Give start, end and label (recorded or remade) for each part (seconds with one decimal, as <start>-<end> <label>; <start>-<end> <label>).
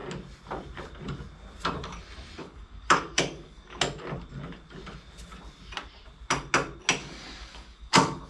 0.0-2.4 recorded; 2.4-3.8 remade; 3.8-7.0 recorded; 7.0-8.3 remade